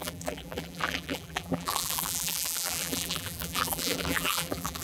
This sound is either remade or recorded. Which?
remade